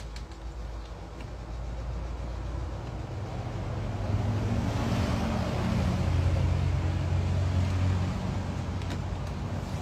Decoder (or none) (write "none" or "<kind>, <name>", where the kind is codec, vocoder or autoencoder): none